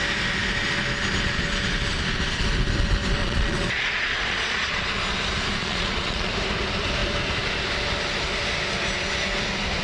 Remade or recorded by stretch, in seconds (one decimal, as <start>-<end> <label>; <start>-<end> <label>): 0.0-3.2 recorded; 3.2-4.9 remade; 4.9-5.6 recorded; 5.6-6.3 remade; 6.3-9.8 recorded